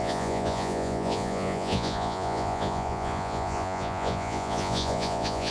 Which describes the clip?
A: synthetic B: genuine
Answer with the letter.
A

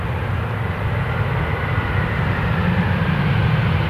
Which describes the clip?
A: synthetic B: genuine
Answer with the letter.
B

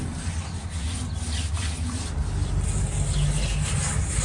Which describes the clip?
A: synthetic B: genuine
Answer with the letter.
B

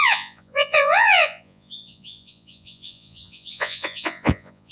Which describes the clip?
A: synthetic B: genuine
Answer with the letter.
A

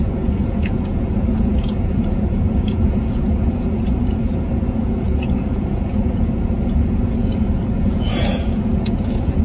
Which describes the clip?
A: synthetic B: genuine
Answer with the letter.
A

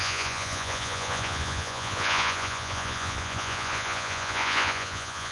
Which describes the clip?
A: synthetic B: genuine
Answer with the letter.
A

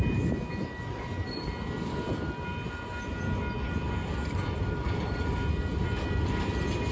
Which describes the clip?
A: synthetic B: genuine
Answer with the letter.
B